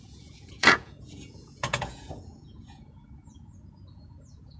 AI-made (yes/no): yes